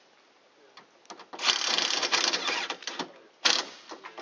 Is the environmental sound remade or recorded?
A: recorded